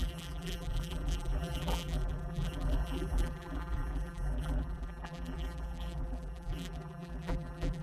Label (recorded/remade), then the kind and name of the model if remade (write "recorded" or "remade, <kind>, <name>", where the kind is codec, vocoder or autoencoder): remade, vocoder, BigVGAN v2